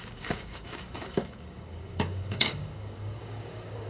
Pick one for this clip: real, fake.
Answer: fake